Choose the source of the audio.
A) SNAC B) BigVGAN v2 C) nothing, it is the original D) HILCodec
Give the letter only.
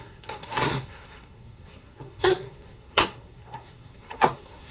A